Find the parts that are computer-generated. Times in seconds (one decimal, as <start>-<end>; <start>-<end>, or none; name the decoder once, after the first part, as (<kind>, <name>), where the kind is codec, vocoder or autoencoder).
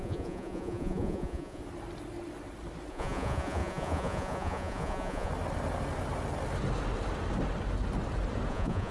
0.0-1.6 (vocoder, Vocos); 2.9-5.3; 8.5-8.9